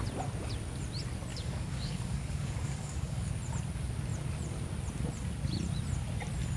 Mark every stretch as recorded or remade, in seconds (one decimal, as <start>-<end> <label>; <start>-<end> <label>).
0.0-1.3 recorded; 1.3-3.3 remade; 3.3-6.6 recorded